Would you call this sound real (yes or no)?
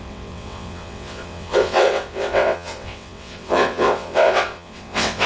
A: no